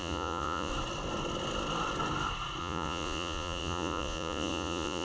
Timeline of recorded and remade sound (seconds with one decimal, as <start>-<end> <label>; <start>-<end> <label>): 0.0-0.7 remade; 0.7-2.6 recorded; 2.6-5.0 remade